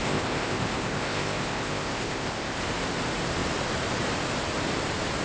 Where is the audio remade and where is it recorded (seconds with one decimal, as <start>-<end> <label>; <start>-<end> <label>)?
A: 0.0-2.6 remade; 2.6-5.2 recorded